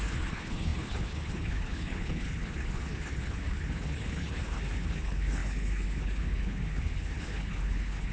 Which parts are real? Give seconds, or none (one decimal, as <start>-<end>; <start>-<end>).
none